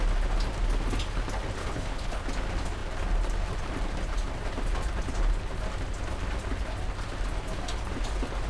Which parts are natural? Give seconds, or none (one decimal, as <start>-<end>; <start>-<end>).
0.0-1.6; 2.2-8.5